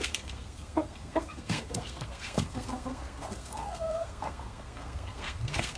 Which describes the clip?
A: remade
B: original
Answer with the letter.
A